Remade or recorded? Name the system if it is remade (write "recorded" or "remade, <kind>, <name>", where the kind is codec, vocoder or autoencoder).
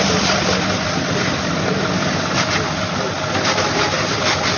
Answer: recorded